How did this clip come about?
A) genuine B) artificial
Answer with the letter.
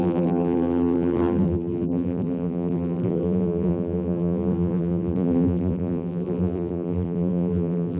B